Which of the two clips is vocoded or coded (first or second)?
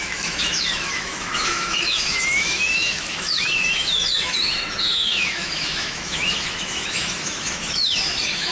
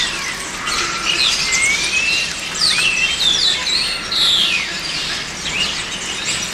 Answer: first